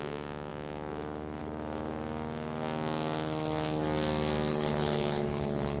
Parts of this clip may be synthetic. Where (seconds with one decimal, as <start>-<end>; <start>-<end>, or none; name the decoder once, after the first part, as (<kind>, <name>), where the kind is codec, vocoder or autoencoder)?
4.5-5.8 (codec, HILCodec)